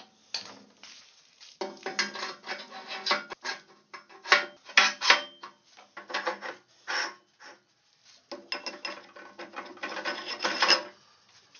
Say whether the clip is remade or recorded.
recorded